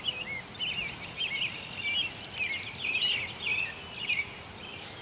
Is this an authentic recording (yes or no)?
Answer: yes